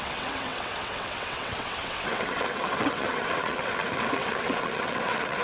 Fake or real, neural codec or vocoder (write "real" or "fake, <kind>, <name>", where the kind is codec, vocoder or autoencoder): fake, vocoder, WaveNeXt